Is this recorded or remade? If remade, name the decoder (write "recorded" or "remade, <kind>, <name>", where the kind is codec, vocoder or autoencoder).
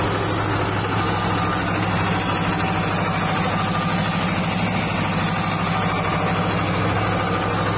recorded